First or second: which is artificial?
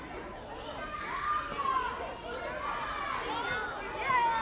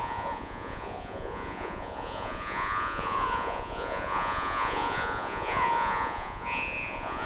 second